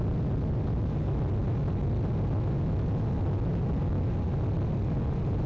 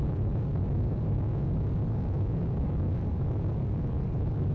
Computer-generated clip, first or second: second